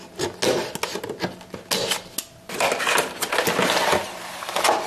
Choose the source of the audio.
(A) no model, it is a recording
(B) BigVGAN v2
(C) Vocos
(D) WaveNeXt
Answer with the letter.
A